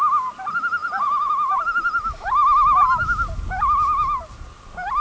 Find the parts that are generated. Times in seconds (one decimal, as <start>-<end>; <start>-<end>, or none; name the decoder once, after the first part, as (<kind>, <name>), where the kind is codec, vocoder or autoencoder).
0.8-1.3 (vocoder, Vocos)